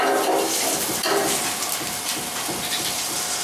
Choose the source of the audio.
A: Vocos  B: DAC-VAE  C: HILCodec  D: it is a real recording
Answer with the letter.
D